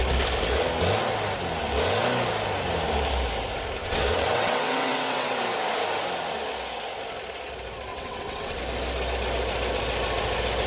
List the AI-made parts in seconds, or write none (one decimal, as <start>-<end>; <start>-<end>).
3.8-5.4; 7.9-8.6